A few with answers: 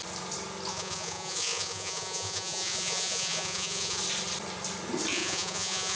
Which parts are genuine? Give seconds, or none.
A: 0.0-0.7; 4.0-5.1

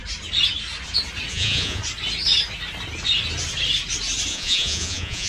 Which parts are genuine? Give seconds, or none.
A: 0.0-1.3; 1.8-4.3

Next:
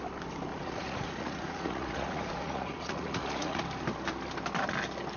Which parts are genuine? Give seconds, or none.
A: 0.0-0.5; 3.6-5.2

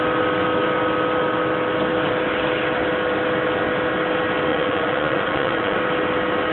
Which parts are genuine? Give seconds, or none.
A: 0.0-4.5; 5.8-6.5

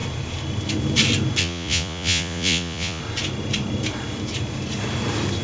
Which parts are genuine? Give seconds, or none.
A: 0.0-1.4; 3.0-5.4